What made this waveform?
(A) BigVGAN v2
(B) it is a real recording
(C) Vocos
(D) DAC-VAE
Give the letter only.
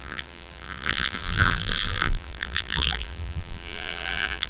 A